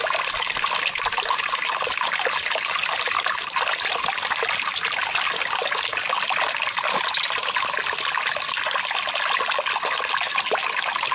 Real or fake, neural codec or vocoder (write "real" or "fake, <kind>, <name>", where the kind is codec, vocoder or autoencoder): real